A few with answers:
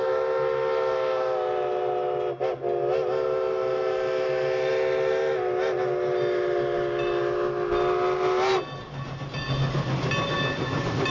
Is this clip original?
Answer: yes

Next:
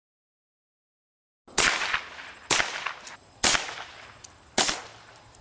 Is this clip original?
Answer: yes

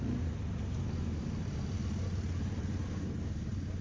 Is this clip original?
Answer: yes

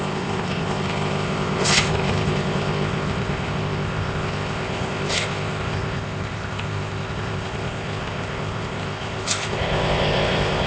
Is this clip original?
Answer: no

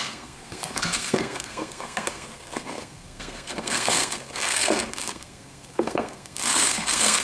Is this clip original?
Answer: no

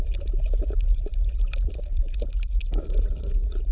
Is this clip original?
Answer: yes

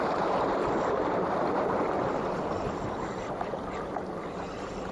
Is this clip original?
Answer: no